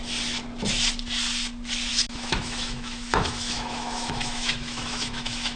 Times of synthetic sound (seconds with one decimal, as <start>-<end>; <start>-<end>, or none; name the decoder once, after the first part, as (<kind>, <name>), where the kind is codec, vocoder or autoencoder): 1.9-5.6 (autoencoder, DAC-VAE)